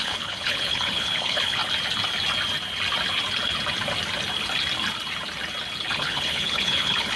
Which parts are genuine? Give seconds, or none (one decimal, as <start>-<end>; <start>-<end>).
1.6-5.9